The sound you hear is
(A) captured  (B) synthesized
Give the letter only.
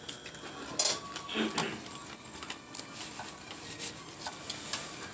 A